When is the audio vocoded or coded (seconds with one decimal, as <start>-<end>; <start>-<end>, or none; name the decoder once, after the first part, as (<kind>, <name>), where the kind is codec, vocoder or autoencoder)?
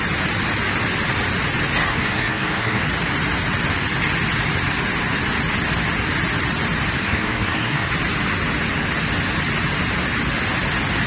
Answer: 1.9-2.8 (codec, SNAC); 7.0-7.9